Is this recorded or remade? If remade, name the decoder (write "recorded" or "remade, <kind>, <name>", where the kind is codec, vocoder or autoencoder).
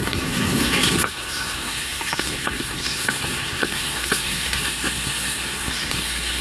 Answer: remade, codec, SNAC